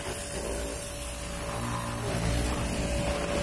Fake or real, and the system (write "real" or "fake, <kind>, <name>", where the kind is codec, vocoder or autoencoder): real